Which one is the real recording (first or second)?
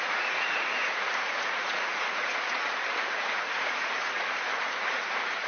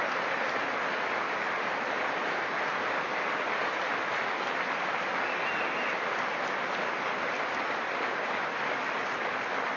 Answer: second